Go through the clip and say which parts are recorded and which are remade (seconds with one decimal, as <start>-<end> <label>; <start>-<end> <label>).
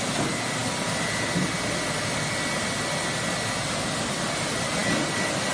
0.0-5.5 recorded